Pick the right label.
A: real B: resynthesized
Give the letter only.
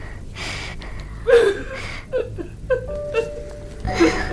A